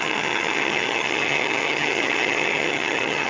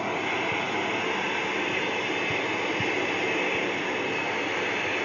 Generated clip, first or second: first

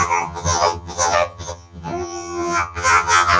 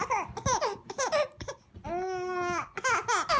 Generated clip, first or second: first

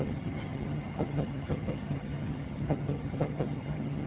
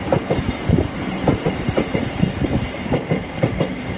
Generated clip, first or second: first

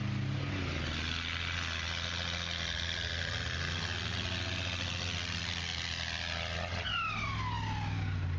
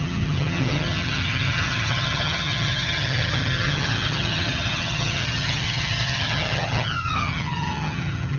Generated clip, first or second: second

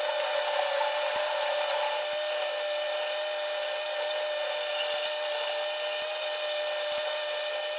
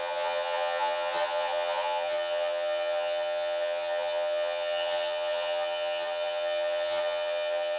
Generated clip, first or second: second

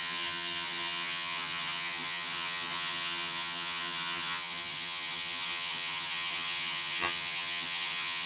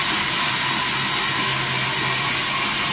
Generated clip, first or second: first